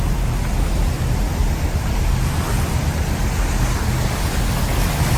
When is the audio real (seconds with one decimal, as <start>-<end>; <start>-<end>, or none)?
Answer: 0.0-1.4; 2.6-5.2